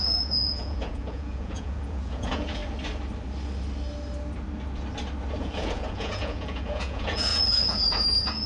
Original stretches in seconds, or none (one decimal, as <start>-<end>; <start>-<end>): 2.6-5.4

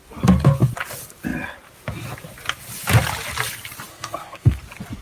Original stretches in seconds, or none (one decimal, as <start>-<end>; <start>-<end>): 0.0-3.9; 4.6-5.0